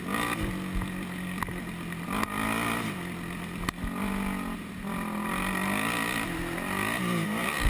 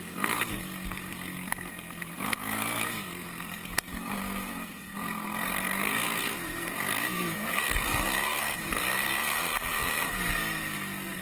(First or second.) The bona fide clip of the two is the first